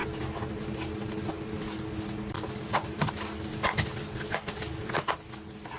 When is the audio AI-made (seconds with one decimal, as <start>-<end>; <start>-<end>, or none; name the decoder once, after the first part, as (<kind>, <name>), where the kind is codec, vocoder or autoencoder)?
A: none